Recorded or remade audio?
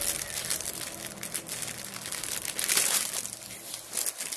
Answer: recorded